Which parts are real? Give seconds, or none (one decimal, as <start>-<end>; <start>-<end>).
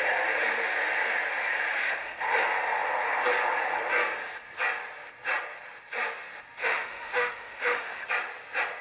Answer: 0.0-1.7; 2.2-6.6; 8.1-8.8